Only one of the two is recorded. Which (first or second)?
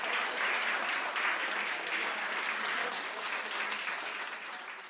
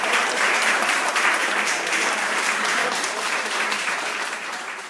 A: first